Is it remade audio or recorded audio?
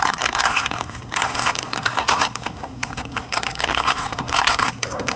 remade